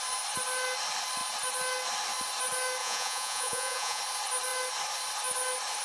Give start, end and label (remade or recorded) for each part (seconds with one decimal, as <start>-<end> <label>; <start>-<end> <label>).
0.0-2.8 recorded; 2.8-4.0 remade; 4.0-5.8 recorded

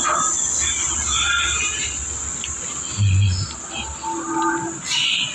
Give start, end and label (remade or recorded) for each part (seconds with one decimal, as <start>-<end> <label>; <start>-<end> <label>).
0.0-5.3 recorded

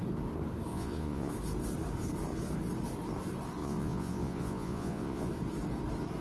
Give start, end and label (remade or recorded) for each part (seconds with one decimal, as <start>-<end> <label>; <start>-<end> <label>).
0.0-0.7 recorded; 0.7-1.3 remade; 1.3-3.6 recorded; 3.6-5.3 remade; 5.3-6.2 recorded

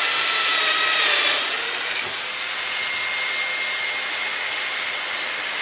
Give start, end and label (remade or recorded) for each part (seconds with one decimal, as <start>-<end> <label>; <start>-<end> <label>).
0.0-5.6 recorded

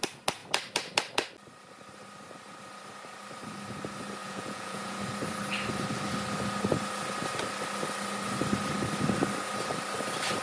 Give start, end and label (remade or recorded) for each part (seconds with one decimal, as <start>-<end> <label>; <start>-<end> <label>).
0.0-4.2 recorded; 4.2-5.0 remade; 5.0-10.4 recorded

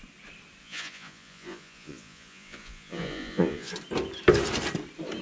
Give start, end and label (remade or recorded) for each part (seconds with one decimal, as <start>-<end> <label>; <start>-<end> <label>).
0.0-0.6 recorded; 0.6-3.7 remade; 3.7-5.2 recorded

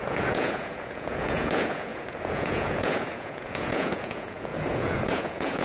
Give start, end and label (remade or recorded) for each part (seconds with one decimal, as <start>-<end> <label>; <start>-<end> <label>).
0.0-5.6 remade

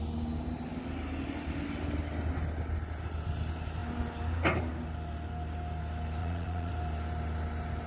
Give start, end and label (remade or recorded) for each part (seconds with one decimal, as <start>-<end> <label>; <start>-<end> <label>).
0.0-6.2 recorded; 6.2-6.7 remade; 6.7-7.9 recorded